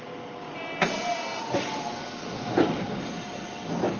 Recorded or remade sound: recorded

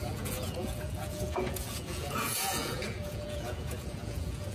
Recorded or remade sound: remade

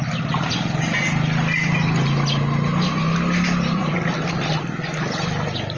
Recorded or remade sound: recorded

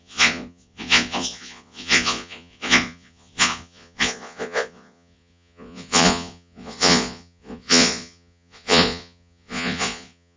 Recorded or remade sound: remade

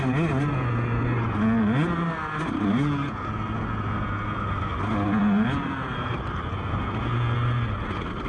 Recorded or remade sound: recorded